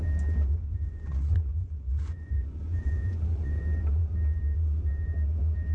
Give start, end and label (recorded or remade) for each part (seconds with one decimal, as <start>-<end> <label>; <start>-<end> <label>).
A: 0.0-0.7 recorded; 0.7-3.6 remade; 3.6-5.7 recorded